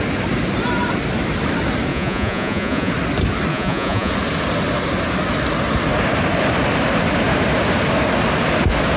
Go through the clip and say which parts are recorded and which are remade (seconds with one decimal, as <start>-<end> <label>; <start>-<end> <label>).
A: 0.0-1.9 recorded; 1.9-2.9 remade; 2.9-3.5 recorded; 3.5-4.1 remade; 4.1-9.0 recorded